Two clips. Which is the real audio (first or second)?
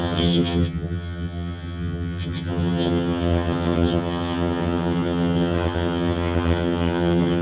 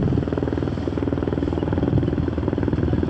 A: second